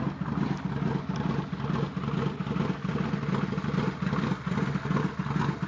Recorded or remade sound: recorded